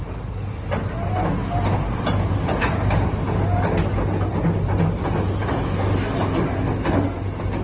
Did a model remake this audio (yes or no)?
no